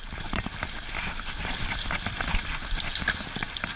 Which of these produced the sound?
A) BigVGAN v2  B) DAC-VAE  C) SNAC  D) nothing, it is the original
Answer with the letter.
D